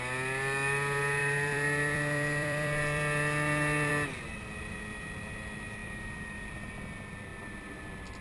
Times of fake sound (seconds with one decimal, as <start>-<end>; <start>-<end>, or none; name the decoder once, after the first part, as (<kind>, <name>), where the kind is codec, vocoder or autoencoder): 1.2-3.9 (vocoder, BigVGAN v2); 5.8-6.5